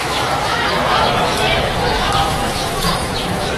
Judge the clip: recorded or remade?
remade